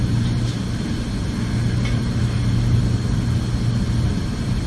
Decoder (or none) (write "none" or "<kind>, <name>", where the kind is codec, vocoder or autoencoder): vocoder, BigVGAN v2